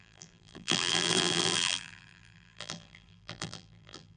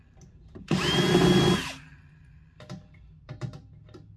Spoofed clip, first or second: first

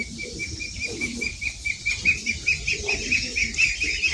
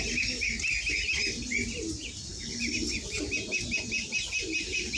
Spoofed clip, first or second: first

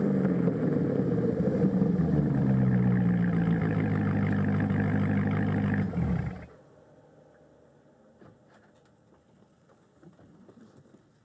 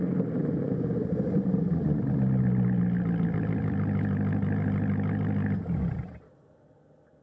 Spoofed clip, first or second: second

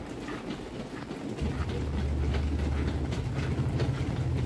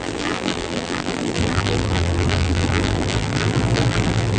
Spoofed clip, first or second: second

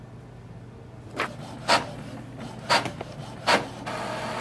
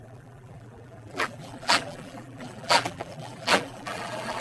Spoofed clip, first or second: second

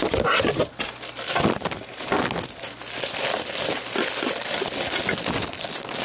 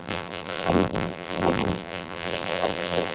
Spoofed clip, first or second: second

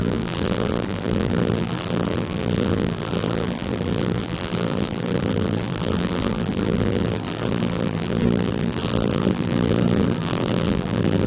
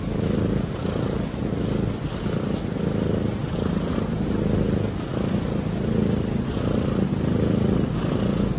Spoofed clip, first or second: first